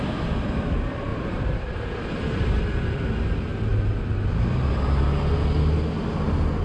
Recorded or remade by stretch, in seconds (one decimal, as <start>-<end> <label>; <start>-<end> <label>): 0.0-1.1 recorded; 1.1-2.6 remade; 2.6-6.6 recorded